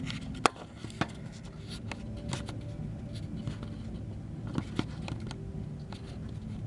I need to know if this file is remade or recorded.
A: recorded